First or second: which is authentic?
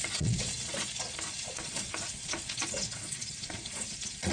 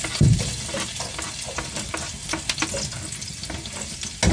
second